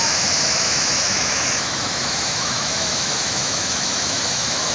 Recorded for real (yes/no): no